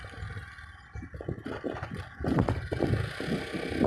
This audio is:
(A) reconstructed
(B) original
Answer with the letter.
B